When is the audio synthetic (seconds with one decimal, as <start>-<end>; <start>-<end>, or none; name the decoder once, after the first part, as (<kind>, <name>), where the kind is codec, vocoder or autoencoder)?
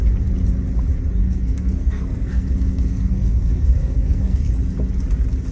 1.2-4.5 (codec, SNAC)